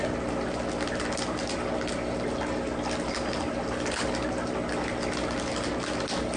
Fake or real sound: real